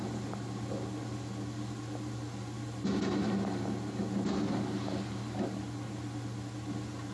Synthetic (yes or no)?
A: no